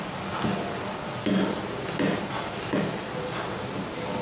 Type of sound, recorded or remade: recorded